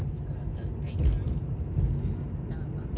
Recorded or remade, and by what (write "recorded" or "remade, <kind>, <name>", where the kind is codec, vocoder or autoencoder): recorded